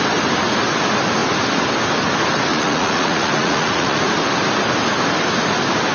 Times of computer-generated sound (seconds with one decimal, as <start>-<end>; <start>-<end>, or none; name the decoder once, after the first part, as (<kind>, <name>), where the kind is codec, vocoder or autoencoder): 2.5-4.0 (vocoder, Vocos)

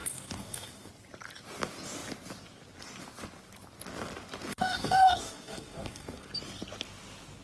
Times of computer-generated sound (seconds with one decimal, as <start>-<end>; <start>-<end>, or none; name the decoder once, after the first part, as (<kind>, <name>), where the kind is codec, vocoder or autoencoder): 0.0-0.9 (codec, DAC); 4.5-6.3

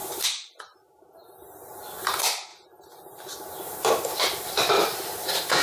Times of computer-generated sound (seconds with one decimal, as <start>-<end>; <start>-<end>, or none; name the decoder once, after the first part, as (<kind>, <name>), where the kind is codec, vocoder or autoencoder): none

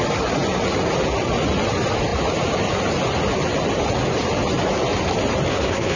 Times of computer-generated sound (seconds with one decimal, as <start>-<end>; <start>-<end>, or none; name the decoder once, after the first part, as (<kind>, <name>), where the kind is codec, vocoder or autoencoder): 5.5-6.0 (codec, SNAC)

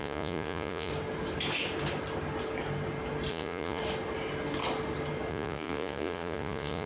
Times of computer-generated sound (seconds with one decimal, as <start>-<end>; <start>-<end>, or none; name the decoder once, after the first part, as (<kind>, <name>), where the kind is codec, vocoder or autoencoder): 0.0-0.9 (vocoder, Vocos); 3.3-3.8; 5.3-6.9